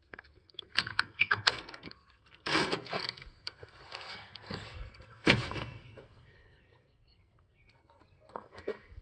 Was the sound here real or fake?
fake